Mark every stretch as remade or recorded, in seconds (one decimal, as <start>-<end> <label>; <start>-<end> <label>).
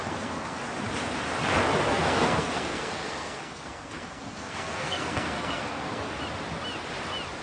0.0-0.6 remade; 0.6-1.8 recorded; 1.8-6.2 remade; 6.2-7.4 recorded